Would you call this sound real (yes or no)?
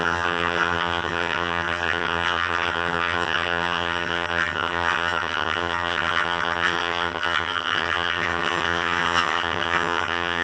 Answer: no